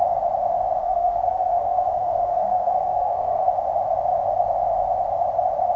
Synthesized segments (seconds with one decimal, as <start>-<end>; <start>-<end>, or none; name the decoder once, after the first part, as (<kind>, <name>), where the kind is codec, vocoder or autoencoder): 0.8-3.5 (codec, SNAC)